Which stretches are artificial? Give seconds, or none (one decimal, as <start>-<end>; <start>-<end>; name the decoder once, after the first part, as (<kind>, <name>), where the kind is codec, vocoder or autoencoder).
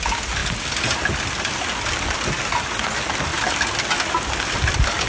none